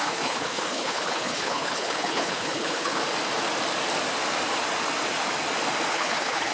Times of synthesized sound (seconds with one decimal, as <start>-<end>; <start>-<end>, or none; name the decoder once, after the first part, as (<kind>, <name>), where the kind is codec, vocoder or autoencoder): 0.0-3.0 (codec, HILCodec); 5.9-6.5

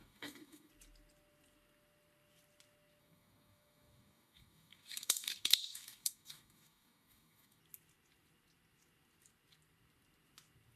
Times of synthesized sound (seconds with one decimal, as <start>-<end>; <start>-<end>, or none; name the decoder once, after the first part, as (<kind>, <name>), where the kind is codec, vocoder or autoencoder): 0.0-0.7 (codec, DAC); 3.0-7.6

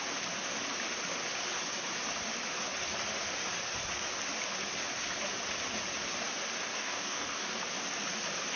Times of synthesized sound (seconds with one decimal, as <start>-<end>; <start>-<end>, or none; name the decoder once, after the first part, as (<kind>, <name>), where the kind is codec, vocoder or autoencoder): 6.7-7.6 (codec, DAC)

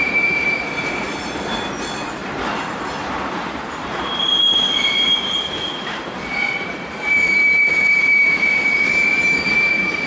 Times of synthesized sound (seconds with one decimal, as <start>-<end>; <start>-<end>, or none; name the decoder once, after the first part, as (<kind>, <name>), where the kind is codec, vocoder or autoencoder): 0.0-10.1 (vocoder, BigVGAN v2)

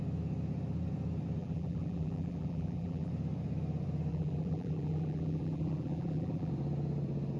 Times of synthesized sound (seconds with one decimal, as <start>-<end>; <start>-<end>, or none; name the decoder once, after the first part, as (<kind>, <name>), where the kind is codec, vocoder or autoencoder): 1.4-3.1 (vocoder, BigVGAN v2); 4.1-6.5

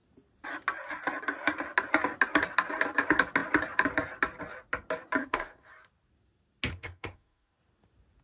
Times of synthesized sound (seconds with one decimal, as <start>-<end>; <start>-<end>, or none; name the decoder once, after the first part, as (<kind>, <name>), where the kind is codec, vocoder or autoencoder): 5.2-5.7 (codec, SNAC); 6.7-7.5

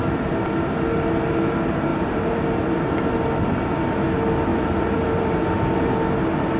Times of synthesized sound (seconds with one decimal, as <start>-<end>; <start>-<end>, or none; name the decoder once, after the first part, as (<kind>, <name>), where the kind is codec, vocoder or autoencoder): 1.9-3.1 (vocoder, BigVGAN v2); 4.5-5.9